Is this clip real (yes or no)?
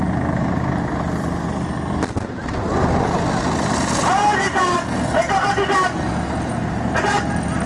yes